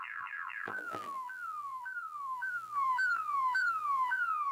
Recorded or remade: remade